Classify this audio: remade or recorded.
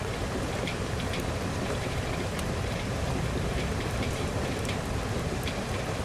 remade